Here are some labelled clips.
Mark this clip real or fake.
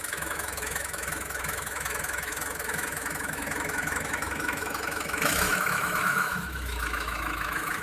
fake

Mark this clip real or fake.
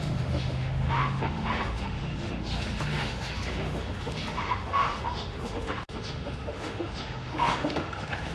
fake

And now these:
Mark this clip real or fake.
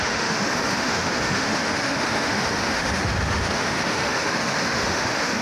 fake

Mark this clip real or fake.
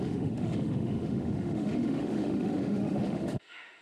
fake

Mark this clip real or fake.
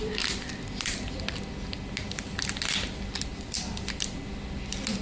real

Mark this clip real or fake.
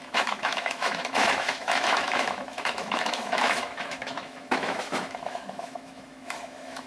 fake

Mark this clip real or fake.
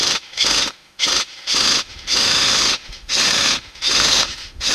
fake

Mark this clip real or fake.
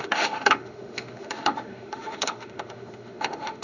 fake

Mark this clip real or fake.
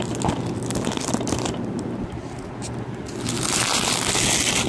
real